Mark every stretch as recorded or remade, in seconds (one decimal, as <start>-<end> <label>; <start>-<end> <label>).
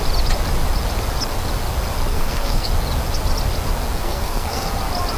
0.0-2.1 recorded; 2.1-2.7 remade; 2.7-4.0 recorded; 4.0-4.7 remade; 4.7-5.2 recorded